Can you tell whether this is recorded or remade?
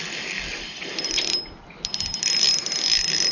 recorded